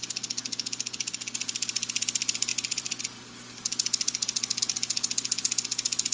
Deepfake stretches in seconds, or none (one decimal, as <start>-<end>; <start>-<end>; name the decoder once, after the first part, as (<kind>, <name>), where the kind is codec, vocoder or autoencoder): none